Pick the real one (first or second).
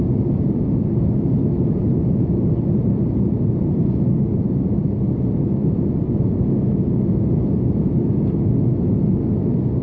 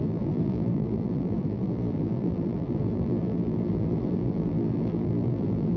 first